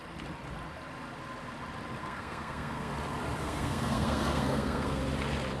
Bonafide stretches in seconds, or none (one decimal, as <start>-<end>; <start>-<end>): 0.0-2.0; 2.9-3.4; 5.0-5.6